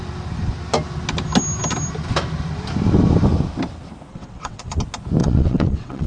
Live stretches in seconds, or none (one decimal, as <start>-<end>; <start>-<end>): 0.0-4.1; 4.8-5.2